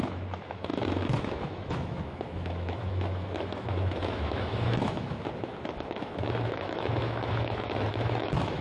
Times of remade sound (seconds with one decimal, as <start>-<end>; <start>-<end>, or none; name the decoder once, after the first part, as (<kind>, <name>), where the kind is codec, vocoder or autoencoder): 0.0-8.6 (autoencoder, DAC-VAE)